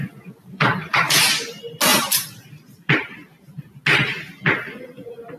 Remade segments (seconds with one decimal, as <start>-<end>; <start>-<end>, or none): 0.4-1.2; 1.9-2.9